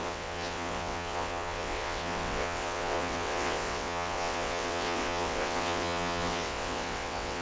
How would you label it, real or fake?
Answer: fake